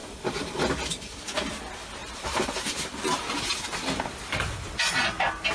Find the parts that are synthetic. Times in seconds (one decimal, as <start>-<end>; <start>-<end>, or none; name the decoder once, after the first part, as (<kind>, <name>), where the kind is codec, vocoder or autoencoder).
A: 0.0-0.6 (vocoder, BigVGAN v2); 2.0-4.9